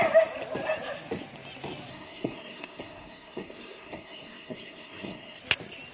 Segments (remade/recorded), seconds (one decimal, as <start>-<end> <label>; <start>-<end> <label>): 0.0-1.9 recorded; 1.9-5.4 remade; 5.4-5.9 recorded